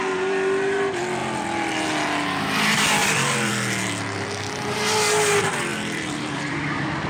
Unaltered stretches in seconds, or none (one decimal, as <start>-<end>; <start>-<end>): 0.0-3.0; 3.5-5.7